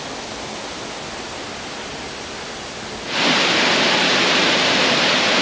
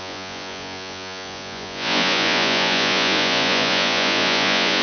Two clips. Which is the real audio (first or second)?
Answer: first